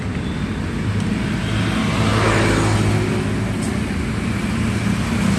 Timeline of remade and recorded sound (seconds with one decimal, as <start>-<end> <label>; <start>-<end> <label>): 0.0-5.4 recorded

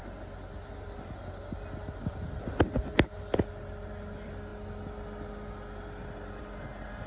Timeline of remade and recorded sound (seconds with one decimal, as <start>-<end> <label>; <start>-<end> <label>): 0.0-7.1 recorded

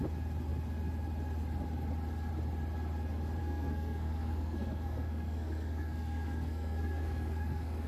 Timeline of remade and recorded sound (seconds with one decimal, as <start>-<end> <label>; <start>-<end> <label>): 0.0-3.4 recorded; 3.4-7.9 remade